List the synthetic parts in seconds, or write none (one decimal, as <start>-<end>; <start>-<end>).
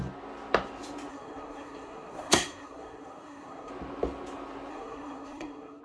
1.1-3.7; 4.7-5.8